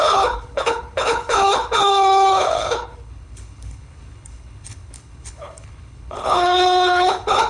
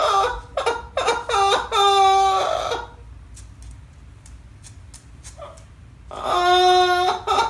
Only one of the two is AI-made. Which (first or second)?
first